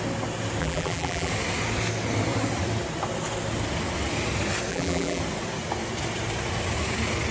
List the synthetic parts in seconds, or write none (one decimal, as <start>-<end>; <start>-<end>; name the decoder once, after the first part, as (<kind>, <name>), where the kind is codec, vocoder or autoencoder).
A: 0.6-1.3 (vocoder, BigVGAN v2); 4.7-5.2